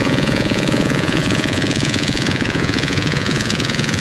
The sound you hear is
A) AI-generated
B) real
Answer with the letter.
A